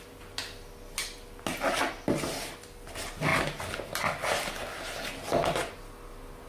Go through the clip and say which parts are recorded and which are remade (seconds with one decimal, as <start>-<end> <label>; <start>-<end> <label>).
0.0-6.5 recorded